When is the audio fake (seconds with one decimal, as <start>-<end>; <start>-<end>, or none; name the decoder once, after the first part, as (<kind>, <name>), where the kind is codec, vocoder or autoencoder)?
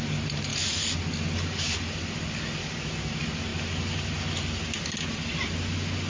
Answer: 2.6-3.1 (codec, DAC)